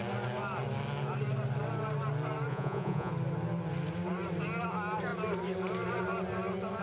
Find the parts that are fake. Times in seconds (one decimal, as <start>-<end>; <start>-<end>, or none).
2.5-3.1